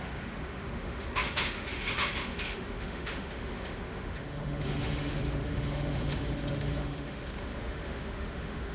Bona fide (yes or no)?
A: no